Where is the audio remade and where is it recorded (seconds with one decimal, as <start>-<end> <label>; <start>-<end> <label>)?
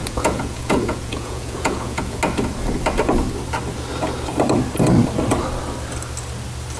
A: 0.0-2.2 remade; 2.2-6.8 recorded